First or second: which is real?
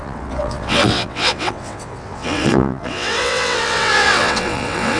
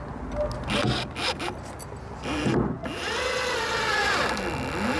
second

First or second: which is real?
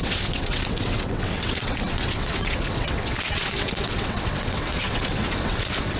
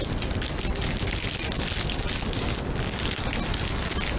second